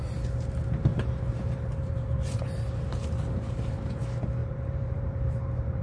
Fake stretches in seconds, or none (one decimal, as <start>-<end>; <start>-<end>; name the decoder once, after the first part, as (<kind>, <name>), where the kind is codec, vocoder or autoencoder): 0.9-4.0 (vocoder, BigVGAN v2); 4.4-5.8